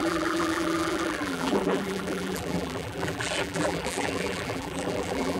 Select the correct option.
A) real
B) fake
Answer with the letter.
B